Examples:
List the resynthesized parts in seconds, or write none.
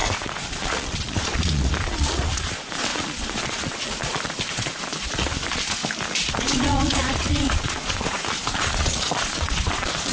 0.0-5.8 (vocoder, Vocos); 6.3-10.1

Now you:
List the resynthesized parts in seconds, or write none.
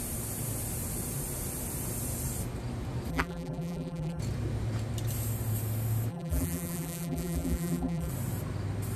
3.1-4.2 (vocoder, BigVGAN v2); 6.1-8.1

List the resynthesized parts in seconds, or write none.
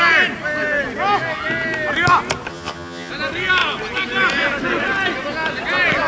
2.5-3.1 (vocoder, HiFi-GAN)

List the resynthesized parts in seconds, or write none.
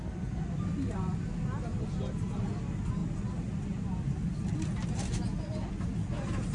none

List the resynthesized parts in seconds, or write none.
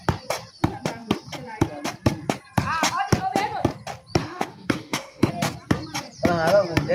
4.2-5.3 (autoencoder, DAC-VAE)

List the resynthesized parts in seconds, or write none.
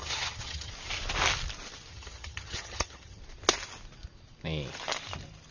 0.0-0.7 (vocoder, HiFi-GAN); 1.9-3.2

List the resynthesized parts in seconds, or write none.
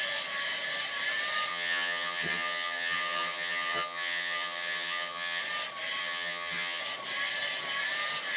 1.5-5.4 (vocoder, HiFi-GAN); 6.0-6.8